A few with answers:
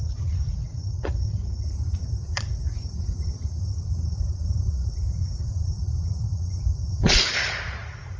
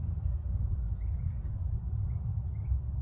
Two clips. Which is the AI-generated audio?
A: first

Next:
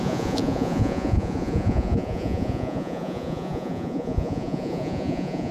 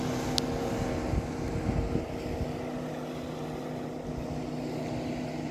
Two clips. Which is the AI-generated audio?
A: first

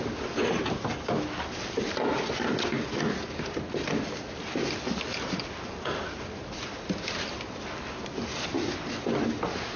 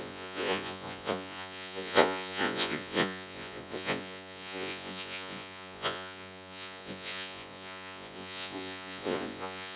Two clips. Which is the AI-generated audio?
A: second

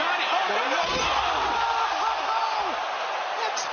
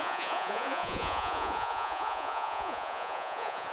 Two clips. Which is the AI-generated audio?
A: second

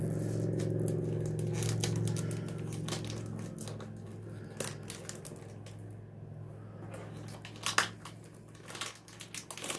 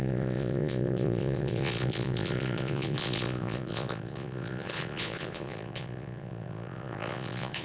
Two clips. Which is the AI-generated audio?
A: second